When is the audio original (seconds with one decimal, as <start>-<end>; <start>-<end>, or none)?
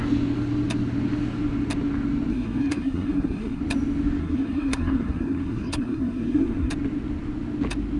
0.0-2.3; 3.6-4.2; 6.7-8.0